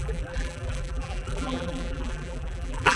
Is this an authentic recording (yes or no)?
no